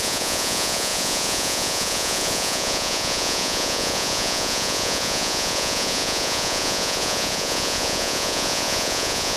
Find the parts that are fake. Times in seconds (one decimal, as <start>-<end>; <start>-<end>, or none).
0.0-9.4